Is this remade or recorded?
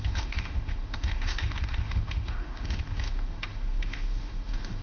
remade